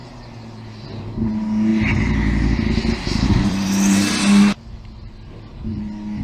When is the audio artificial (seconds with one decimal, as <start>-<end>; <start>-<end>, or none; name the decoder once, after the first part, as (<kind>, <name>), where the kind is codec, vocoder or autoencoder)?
none